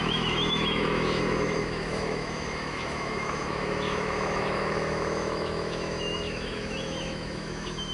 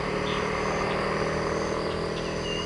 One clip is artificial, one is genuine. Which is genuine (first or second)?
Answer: second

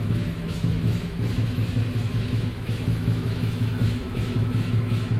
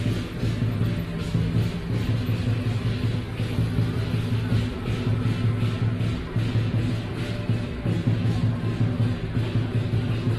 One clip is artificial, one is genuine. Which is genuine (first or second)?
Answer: second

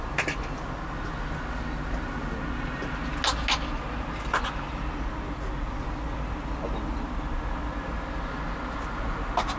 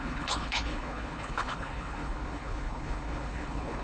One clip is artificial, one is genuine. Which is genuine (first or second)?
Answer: first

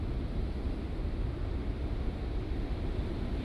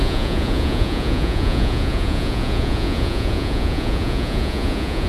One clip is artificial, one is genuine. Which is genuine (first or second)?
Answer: first